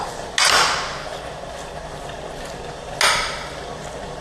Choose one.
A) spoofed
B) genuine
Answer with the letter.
B